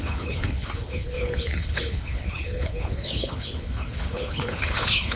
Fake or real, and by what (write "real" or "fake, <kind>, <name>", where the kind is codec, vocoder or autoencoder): fake, codec, HILCodec